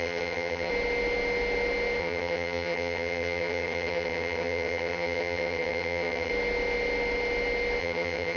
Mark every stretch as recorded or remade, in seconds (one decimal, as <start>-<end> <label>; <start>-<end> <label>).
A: 0.0-0.7 remade; 0.7-2.0 recorded; 2.0-6.3 remade; 6.3-7.8 recorded; 7.8-8.4 remade